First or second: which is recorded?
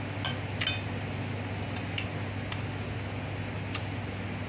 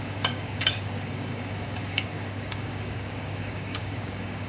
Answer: first